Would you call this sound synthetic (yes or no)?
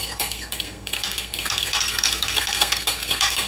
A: yes